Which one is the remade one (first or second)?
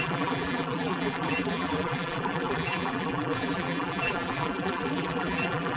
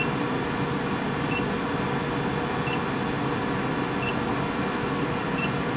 first